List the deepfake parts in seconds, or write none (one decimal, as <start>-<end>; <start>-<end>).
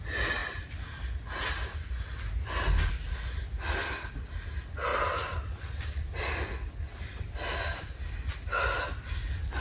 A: none